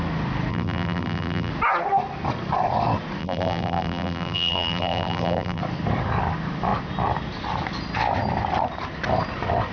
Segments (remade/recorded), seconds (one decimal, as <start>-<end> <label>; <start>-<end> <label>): 0.0-0.5 recorded; 0.5-1.5 remade; 1.5-3.2 recorded; 3.2-5.6 remade; 5.6-9.7 recorded

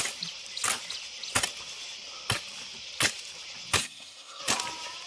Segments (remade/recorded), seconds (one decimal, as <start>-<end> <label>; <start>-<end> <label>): 0.0-3.8 recorded; 3.8-4.4 remade; 4.4-5.1 recorded

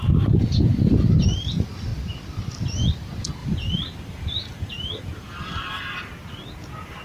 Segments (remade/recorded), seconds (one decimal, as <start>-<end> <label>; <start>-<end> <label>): 0.0-3.4 recorded; 3.4-5.8 remade; 5.8-7.0 recorded

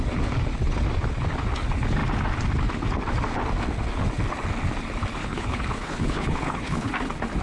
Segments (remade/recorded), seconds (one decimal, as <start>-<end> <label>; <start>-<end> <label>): 0.0-5.2 recorded; 5.2-6.9 remade; 6.9-7.4 recorded

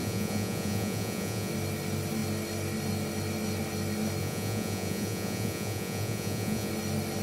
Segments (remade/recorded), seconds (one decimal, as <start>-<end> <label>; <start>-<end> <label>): 0.0-1.5 remade; 1.5-4.2 recorded; 4.2-6.7 remade; 6.7-7.2 recorded